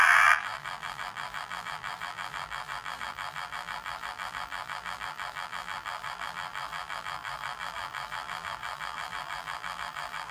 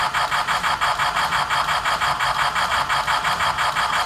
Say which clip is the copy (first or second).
first